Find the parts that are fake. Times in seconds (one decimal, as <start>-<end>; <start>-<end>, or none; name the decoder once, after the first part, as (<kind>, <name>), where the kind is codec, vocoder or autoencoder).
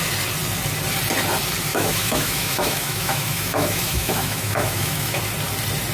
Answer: 1.7-5.2 (autoencoder, DAC-VAE)